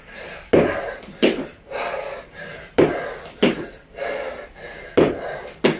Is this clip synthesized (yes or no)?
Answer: no